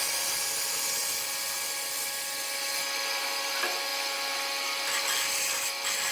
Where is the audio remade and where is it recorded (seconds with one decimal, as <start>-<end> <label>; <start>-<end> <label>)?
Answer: 0.0-6.1 recorded